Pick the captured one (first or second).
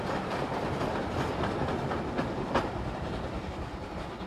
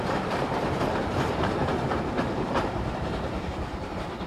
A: first